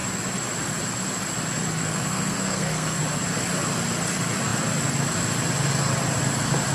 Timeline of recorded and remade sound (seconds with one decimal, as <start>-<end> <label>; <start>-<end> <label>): 0.0-1.8 recorded; 1.8-3.0 remade; 3.0-6.7 recorded